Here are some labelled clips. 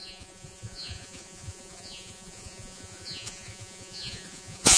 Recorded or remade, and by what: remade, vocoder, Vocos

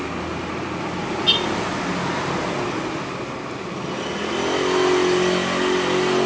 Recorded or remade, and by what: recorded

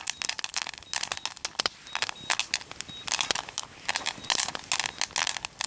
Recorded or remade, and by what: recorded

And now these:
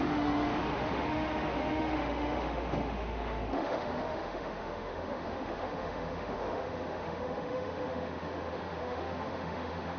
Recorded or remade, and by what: remade, autoencoder, DAC-VAE